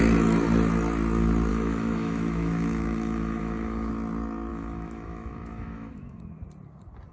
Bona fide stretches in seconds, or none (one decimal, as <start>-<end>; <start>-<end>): 0.0-1.5; 3.9-4.5; 6.2-7.1